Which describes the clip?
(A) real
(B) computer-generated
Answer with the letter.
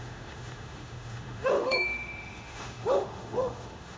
B